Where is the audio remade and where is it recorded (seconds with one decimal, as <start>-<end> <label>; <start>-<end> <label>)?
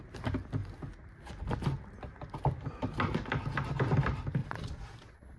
0.0-4.4 recorded; 4.4-5.4 remade